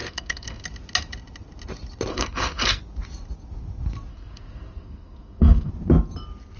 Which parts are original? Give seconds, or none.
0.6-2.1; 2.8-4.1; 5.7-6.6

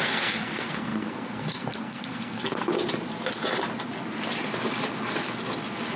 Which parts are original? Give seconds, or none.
2.7-6.0

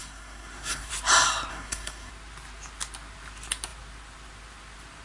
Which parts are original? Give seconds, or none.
0.9-1.5; 2.1-5.0